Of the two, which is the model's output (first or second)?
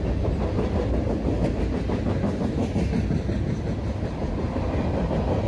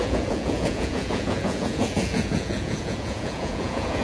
second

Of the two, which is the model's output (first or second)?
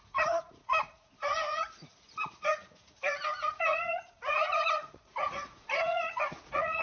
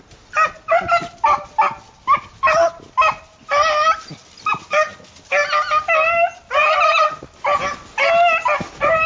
first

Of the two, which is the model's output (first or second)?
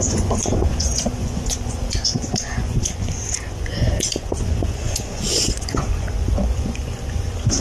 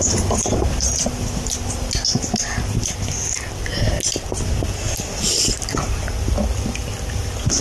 first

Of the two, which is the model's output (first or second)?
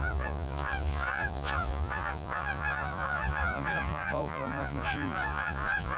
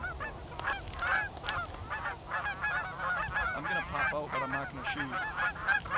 first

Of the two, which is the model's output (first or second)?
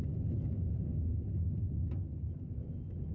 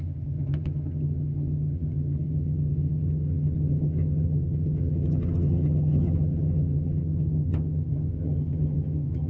second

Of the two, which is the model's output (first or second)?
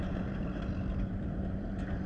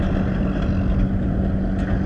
first